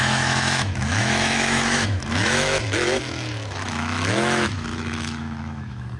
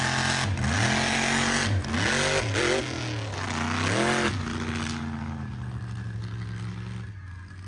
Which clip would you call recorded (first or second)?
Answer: second